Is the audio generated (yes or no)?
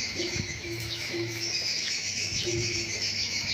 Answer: yes